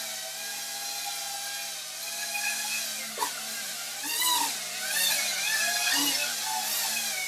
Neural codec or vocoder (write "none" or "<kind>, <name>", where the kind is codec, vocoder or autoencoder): none